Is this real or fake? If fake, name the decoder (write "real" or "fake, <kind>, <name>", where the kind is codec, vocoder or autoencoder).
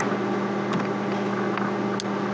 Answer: real